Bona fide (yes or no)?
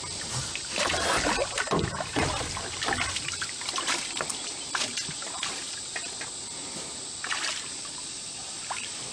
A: yes